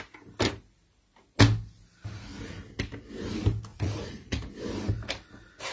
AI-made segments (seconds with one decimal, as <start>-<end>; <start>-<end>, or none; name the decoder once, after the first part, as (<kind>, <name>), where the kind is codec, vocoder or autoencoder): 3.7-4.5 (vocoder, Vocos)